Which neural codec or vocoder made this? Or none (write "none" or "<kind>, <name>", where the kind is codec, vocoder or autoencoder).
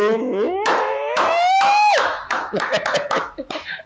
autoencoder, DAC-VAE